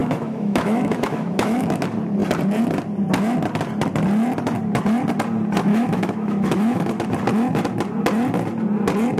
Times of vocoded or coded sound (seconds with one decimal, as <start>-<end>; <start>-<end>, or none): 0.0-1.8; 5.7-7.0